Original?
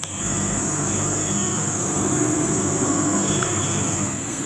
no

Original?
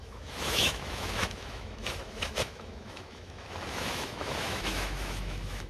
no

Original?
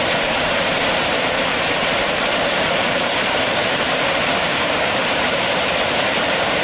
no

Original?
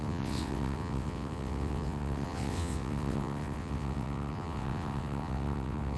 no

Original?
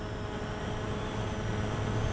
yes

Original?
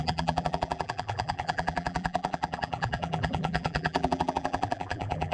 no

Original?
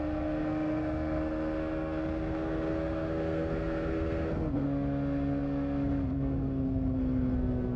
no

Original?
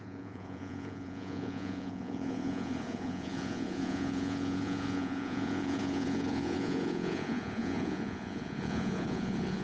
no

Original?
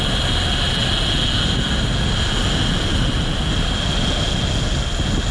yes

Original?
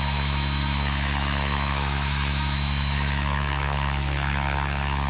no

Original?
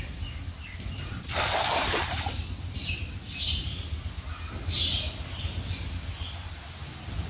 yes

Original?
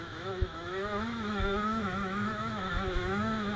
no